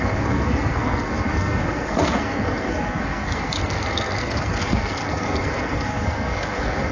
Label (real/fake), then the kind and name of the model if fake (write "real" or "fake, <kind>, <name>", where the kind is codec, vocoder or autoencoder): fake, codec, SNAC